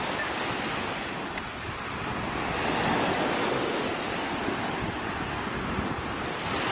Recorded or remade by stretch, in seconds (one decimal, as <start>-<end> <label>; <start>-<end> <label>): 0.0-6.7 recorded